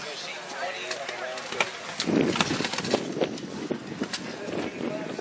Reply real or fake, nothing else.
real